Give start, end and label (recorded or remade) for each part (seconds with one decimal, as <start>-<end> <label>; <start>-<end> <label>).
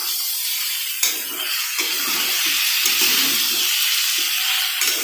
0.0-3.0 remade; 3.0-5.0 recorded